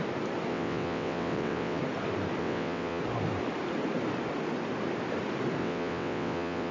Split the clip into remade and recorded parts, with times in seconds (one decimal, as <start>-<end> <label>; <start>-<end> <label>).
0.0-0.5 recorded; 0.5-1.8 remade; 1.8-2.4 recorded; 2.4-3.0 remade; 3.0-5.6 recorded; 5.6-6.7 remade